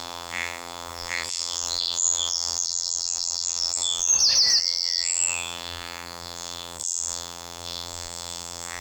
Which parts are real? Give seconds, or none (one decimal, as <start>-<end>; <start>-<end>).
4.1-4.6